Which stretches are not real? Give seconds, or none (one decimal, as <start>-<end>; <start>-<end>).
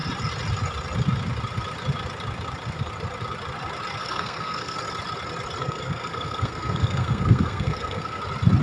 4.0-4.8; 5.6-8.2